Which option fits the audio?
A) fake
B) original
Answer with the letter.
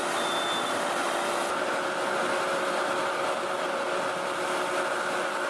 B